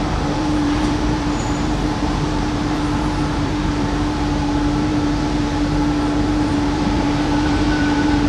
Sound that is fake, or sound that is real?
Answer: fake